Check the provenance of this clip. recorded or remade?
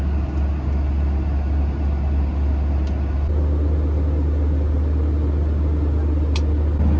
recorded